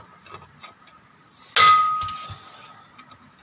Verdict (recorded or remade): recorded